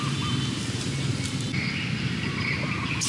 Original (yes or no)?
yes